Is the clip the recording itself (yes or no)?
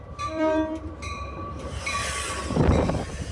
no